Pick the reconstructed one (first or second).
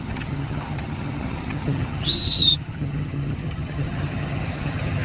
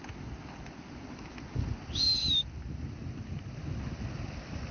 first